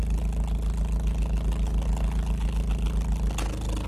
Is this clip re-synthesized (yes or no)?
no